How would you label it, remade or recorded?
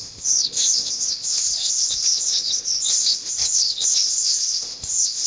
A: remade